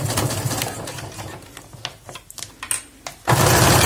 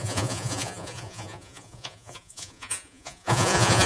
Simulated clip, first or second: second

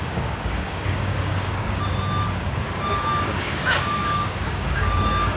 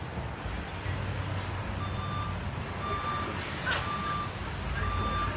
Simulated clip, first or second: first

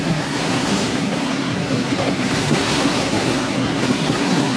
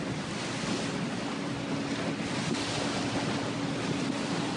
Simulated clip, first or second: first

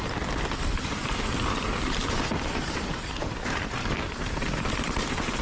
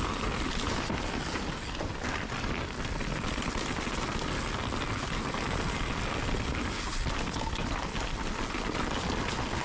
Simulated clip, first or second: first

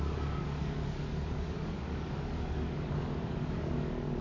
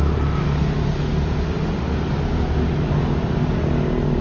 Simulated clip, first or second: first